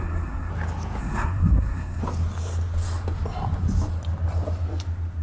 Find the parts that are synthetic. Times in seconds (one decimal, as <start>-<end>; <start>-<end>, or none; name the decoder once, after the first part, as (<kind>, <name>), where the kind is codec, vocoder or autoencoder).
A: 0.0-0.5 (codec, SNAC); 1.0-2.0